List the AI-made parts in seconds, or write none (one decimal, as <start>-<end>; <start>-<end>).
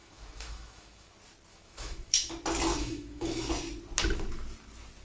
0.0-1.1; 1.5-2.3; 2.7-3.5